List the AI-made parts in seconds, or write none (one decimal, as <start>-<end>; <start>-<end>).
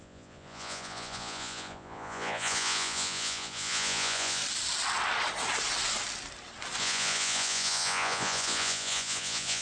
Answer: 0.0-4.4; 6.8-9.6